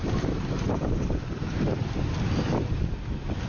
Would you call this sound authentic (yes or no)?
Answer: yes